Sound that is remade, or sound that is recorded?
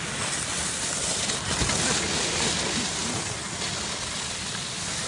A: recorded